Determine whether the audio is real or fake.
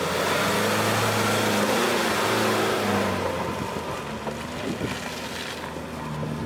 real